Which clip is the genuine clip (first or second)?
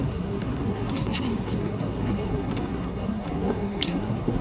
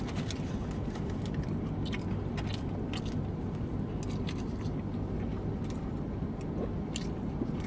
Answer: second